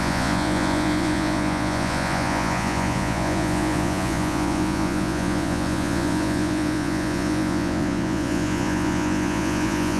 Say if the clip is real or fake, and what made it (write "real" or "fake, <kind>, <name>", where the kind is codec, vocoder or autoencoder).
fake, vocoder, Vocos